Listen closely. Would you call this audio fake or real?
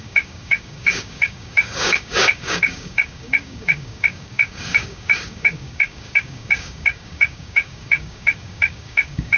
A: fake